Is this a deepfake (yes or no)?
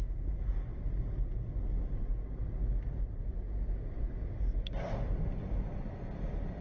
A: no